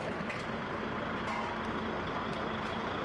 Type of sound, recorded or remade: recorded